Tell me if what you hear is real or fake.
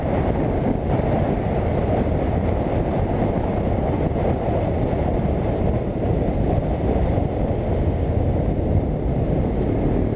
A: real